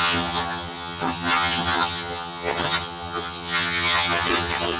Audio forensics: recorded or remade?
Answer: remade